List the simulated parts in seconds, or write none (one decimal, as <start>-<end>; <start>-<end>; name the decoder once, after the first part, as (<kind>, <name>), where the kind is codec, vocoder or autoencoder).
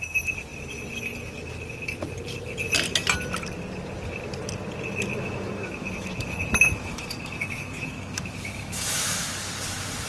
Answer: 5.1-9.3 (autoencoder, DAC-VAE)